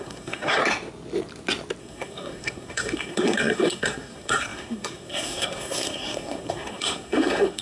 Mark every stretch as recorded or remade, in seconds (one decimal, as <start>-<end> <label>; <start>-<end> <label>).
0.0-0.6 remade; 0.6-1.8 recorded; 1.8-7.6 remade